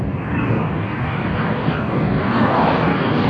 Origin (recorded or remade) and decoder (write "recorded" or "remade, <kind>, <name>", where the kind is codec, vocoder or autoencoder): remade, codec, DAC